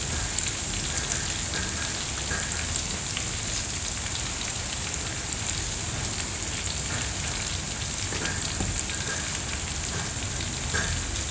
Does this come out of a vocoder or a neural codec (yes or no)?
no